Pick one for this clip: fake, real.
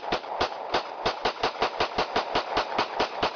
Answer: real